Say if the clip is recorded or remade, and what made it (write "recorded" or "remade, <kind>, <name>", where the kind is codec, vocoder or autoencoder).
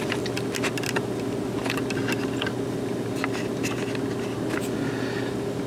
recorded